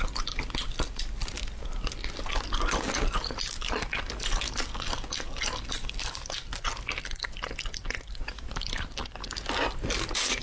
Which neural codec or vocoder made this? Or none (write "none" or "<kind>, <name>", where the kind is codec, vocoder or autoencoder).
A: none